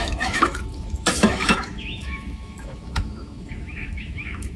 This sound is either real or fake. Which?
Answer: fake